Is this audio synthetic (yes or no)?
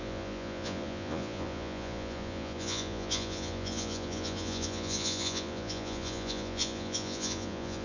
yes